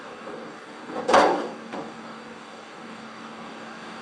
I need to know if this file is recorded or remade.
remade